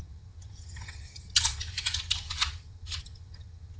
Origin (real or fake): fake